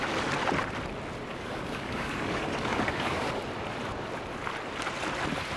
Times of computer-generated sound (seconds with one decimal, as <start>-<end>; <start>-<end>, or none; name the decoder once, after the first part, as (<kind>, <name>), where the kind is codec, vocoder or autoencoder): 1.3-3.4 (codec, DAC)